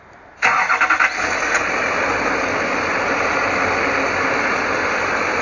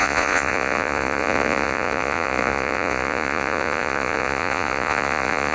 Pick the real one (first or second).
first